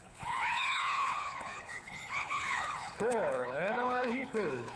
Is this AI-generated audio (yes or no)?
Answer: yes